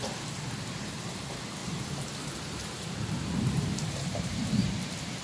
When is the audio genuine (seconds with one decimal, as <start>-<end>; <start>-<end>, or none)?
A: 0.0-1.6; 4.7-5.2